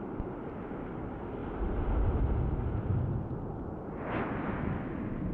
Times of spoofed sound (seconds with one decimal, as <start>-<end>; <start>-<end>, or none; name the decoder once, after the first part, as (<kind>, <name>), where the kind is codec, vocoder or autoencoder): none